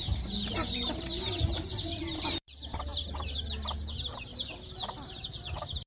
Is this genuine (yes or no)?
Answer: no